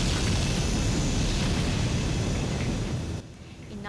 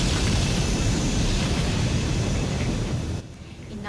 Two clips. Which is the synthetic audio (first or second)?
second